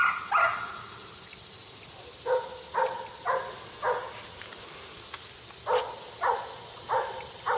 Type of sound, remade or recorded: recorded